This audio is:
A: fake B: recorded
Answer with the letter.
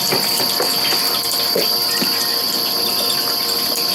B